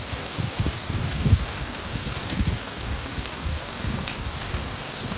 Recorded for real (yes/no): no